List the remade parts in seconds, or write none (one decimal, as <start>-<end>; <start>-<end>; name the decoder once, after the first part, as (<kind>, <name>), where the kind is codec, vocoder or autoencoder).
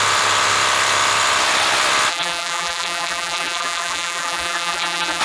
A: 2.1-5.2 (vocoder, BigVGAN v2)